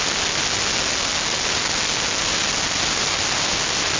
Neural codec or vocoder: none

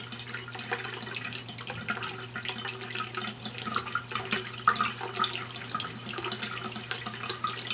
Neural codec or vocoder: none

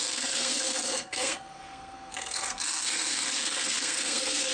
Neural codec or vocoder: codec, SNAC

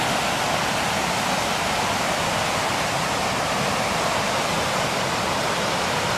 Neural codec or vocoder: none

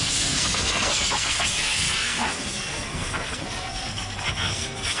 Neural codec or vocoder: codec, SNAC